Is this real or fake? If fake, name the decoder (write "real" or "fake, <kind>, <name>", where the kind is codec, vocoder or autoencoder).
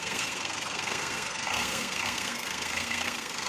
fake, codec, SNAC